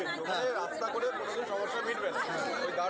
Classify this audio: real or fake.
fake